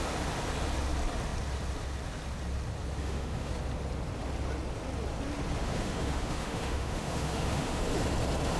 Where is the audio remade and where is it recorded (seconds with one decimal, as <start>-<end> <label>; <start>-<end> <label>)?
0.0-3.0 recorded; 3.0-3.5 remade; 3.5-5.6 recorded; 5.6-7.8 remade; 7.8-8.6 recorded

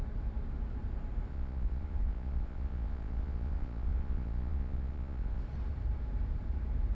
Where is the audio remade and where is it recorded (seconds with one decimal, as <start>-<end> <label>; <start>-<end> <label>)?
0.0-1.3 recorded; 1.3-5.4 remade; 5.4-6.9 recorded

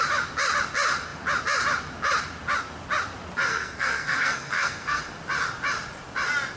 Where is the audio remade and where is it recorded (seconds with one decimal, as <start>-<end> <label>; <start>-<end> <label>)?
0.0-3.5 recorded; 3.5-5.0 remade; 5.0-6.6 recorded

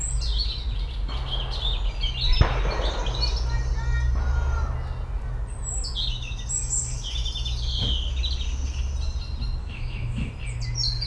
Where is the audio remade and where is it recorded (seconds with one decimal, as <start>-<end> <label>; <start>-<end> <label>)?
0.0-9.6 recorded; 9.6-10.3 remade; 10.3-11.1 recorded

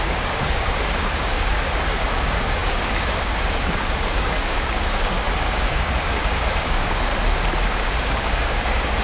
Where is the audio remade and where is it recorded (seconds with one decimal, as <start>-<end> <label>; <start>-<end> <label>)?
0.0-7.1 remade; 7.1-7.7 recorded; 7.7-9.0 remade

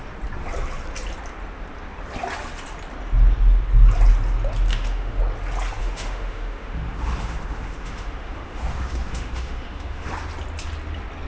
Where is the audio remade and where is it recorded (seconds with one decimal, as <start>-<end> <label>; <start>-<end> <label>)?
0.0-4.7 recorded; 4.7-5.2 remade; 5.2-5.8 recorded; 5.8-10.1 remade; 10.1-11.3 recorded